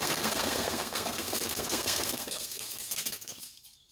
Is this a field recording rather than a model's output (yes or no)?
no